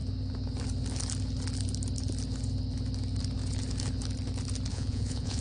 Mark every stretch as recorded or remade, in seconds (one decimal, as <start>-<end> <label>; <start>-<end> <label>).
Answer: 0.0-4.7 recorded; 4.7-5.4 remade